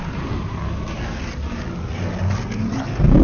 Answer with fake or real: real